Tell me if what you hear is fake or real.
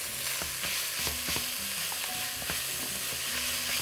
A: real